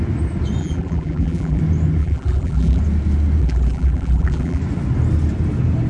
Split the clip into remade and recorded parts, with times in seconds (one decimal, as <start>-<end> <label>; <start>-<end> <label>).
0.0-0.6 recorded; 0.6-1.6 remade; 1.6-2.0 recorded; 2.0-2.8 remade; 2.8-3.4 recorded; 3.4-4.6 remade; 4.6-5.9 recorded